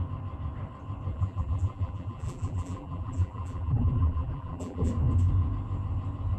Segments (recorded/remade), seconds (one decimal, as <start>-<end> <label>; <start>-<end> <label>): 0.0-1.1 recorded; 1.1-4.9 remade; 4.9-6.4 recorded